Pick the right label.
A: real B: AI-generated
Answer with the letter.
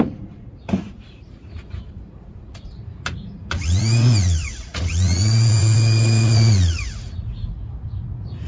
B